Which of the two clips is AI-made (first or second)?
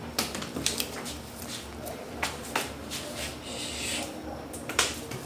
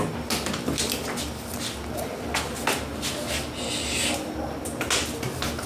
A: first